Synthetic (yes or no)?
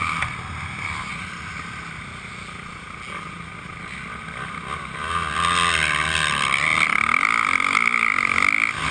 no